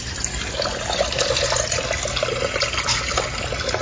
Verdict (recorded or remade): recorded